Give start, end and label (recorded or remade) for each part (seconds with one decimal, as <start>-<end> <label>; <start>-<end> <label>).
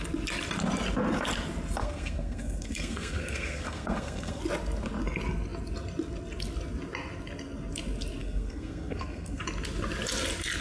0.0-1.8 recorded; 1.8-4.4 remade; 4.4-8.2 recorded; 8.2-9.4 remade; 9.4-10.6 recorded